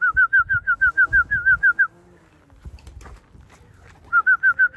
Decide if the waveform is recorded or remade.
recorded